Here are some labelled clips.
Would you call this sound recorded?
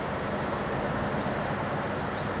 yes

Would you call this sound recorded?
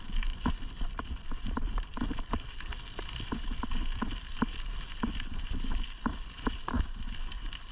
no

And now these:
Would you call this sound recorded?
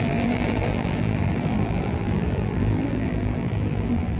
no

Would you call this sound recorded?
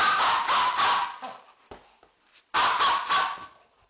yes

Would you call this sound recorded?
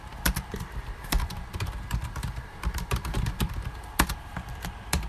no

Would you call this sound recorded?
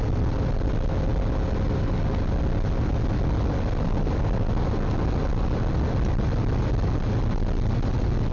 yes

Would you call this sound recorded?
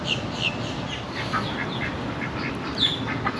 no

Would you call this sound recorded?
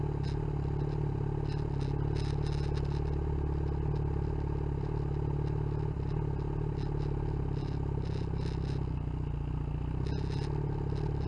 yes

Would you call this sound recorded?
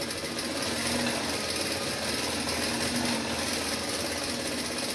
yes